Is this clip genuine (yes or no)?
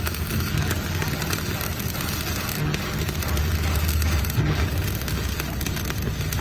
yes